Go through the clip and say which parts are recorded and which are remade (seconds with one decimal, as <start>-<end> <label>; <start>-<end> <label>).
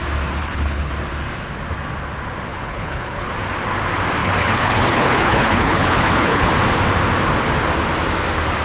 0.0-0.4 recorded; 0.4-0.9 remade; 0.9-2.5 recorded; 2.5-3.3 remade; 3.3-4.2 recorded; 4.2-6.5 remade; 6.5-8.6 recorded